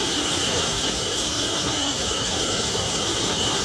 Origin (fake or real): fake